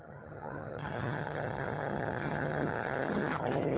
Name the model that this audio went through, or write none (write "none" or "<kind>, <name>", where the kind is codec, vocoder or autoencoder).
vocoder, HiFi-GAN